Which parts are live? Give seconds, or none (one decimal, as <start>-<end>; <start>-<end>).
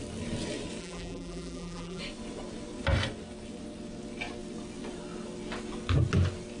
0.0-0.8; 2.0-6.6